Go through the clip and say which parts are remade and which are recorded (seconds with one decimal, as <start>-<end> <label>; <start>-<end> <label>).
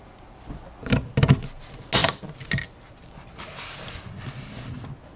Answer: 0.0-5.2 recorded